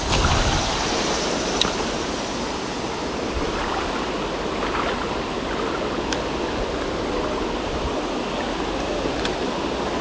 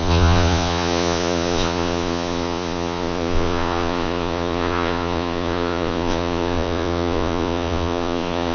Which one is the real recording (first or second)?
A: first